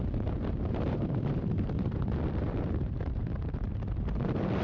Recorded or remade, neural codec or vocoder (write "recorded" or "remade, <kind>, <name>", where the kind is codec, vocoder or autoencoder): remade, vocoder, BigVGAN v2